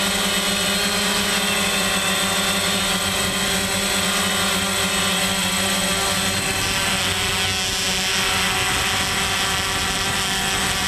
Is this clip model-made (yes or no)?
no